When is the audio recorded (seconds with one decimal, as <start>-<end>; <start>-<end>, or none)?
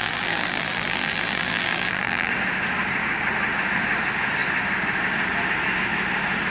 2.3-6.5